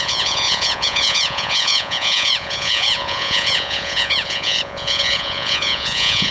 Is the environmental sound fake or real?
fake